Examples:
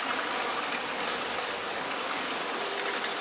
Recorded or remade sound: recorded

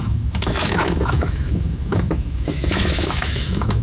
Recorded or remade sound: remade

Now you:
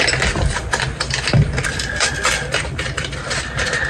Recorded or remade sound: recorded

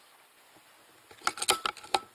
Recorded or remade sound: recorded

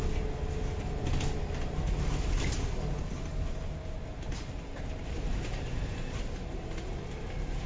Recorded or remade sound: recorded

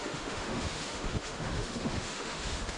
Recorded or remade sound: remade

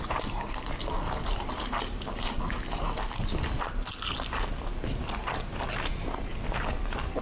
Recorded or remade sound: recorded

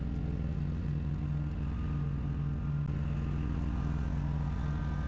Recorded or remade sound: recorded